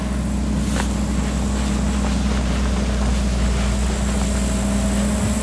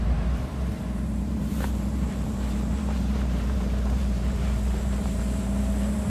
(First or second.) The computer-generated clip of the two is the second